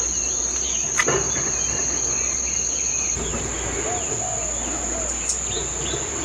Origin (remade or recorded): recorded